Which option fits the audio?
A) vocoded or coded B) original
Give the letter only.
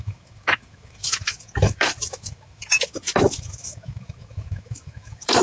A